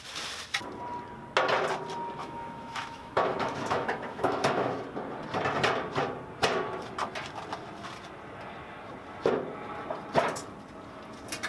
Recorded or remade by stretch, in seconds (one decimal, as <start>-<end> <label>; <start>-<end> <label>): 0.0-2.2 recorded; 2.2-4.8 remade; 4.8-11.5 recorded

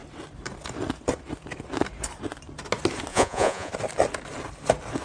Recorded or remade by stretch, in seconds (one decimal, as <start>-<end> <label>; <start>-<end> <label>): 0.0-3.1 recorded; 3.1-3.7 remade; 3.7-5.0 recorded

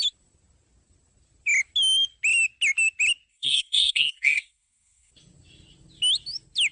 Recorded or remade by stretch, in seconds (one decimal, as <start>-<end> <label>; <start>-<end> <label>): 0.0-3.3 recorded; 3.3-5.1 remade; 5.1-6.7 recorded